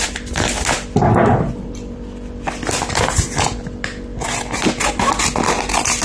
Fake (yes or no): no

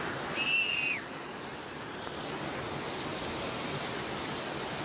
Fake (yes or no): no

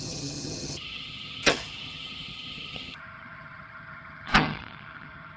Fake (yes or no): yes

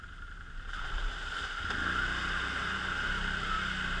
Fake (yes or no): no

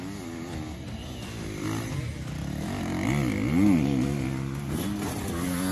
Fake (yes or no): no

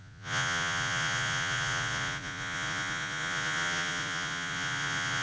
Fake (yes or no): yes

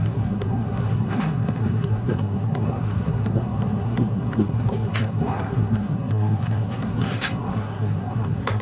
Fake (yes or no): yes